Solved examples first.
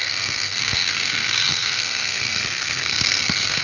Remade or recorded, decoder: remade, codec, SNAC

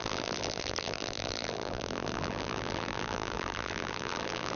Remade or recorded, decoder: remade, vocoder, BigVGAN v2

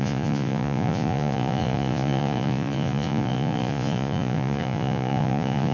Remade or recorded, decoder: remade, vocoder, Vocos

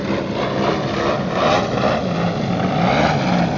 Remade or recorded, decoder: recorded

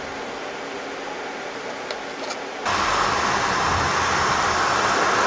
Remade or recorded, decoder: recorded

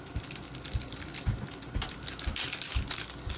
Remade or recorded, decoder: recorded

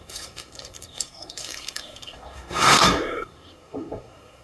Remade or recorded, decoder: remade, codec, SNAC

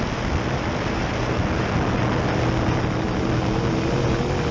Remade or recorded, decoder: recorded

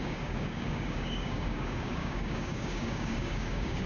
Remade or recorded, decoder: remade, codec, DAC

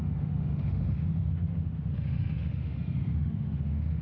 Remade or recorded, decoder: remade, autoencoder, DAC-VAE